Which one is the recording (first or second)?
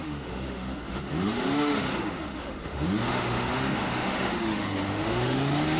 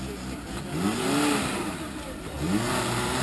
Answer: second